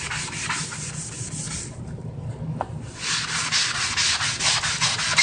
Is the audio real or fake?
real